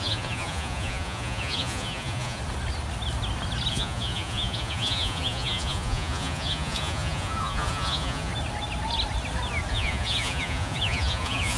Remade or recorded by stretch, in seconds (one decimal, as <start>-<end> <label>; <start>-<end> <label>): 0.0-2.4 remade; 2.4-3.7 recorded; 3.7-8.3 remade; 8.3-9.7 recorded; 9.7-11.6 remade